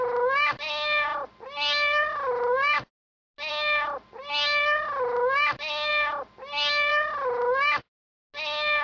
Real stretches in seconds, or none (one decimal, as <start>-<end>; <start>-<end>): 0.0-8.8